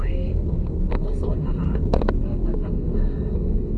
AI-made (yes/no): yes